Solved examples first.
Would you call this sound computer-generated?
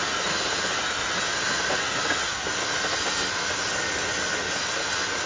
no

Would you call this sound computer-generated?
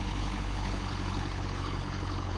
yes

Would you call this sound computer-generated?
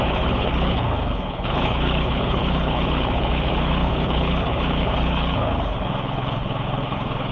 yes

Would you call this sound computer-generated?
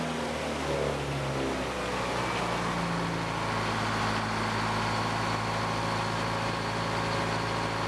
no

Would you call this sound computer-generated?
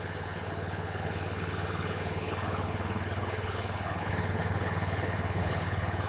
yes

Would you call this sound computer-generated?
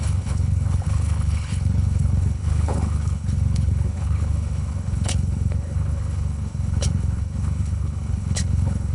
yes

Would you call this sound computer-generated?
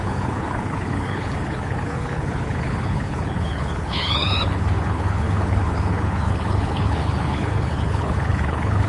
yes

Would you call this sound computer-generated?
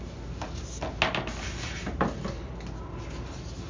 no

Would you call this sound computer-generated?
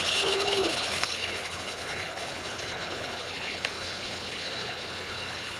yes